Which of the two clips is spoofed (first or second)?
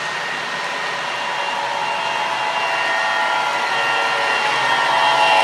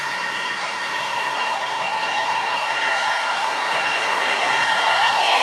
second